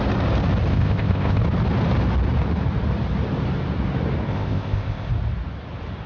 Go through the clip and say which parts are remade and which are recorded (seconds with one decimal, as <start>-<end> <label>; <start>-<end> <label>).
0.0-0.7 recorded; 0.7-1.4 remade; 1.4-4.3 recorded; 4.3-5.1 remade; 5.1-6.1 recorded